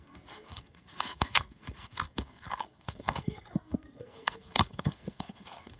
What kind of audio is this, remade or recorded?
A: remade